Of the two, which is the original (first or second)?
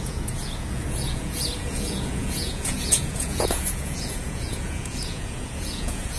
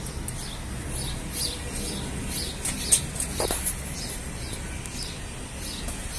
second